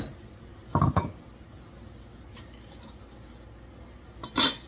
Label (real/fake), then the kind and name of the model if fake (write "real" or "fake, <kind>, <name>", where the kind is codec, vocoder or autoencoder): real